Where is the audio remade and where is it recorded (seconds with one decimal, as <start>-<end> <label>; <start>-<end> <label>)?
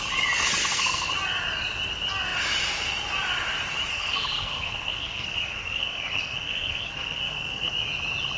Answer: 0.0-0.6 recorded; 0.6-1.1 remade; 1.1-3.9 recorded; 3.9-7.7 remade; 7.7-8.4 recorded